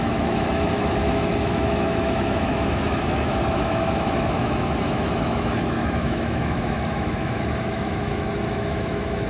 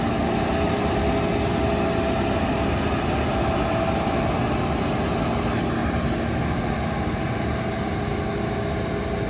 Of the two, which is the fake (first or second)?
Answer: first